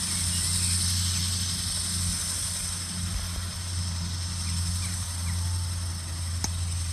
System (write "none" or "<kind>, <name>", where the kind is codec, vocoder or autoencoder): none